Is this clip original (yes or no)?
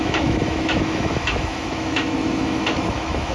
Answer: no